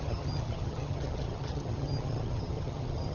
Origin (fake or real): fake